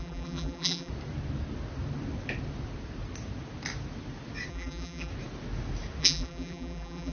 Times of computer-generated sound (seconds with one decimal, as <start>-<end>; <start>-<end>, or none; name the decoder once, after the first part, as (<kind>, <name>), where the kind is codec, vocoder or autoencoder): 0.0-0.9 (vocoder, BigVGAN v2); 4.5-5.1; 6.0-7.1